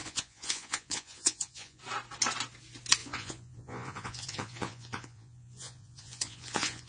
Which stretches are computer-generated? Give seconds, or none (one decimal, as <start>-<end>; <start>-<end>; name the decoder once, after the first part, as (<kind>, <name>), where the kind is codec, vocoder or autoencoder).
0.0-1.8 (vocoder, Vocos); 3.0-6.9